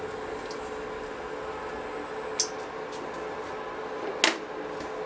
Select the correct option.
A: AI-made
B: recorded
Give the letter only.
B